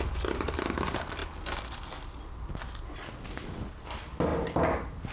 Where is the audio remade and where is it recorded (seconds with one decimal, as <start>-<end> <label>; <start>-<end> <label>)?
0.0-5.1 recorded